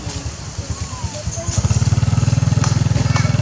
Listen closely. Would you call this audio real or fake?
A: real